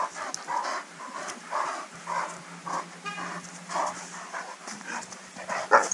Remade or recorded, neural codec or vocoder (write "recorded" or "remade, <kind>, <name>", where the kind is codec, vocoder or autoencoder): recorded